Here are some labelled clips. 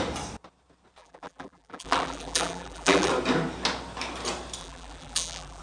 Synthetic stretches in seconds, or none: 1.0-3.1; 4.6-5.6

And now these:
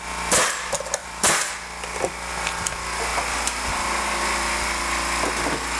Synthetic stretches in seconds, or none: 1.0-2.3

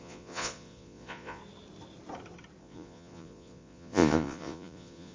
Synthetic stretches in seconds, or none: 0.0-1.4; 2.6-5.1

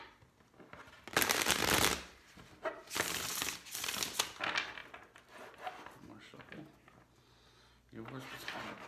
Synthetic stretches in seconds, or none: none

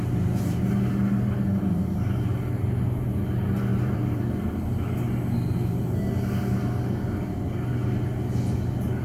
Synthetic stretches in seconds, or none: 3.7-4.5